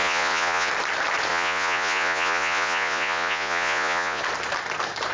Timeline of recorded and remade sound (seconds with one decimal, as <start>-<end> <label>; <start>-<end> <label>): 0.0-0.7 remade; 0.7-1.3 recorded; 1.3-4.2 remade; 4.2-5.1 recorded